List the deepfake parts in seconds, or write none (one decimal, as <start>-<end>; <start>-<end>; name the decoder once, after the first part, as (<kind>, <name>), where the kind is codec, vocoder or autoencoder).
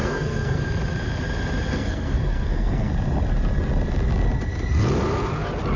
0.0-0.6 (codec, SNAC); 1.7-2.9